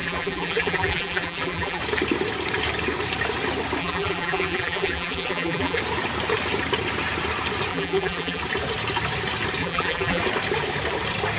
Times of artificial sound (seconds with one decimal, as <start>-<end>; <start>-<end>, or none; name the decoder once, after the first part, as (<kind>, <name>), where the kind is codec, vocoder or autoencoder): 0.0-1.8 (vocoder, BigVGAN v2); 3.8-5.8; 7.7-8.4; 9.6-10.2